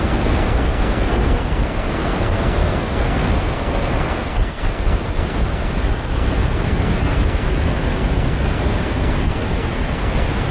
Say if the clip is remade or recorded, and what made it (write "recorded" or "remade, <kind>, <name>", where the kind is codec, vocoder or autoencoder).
remade, codec, SNAC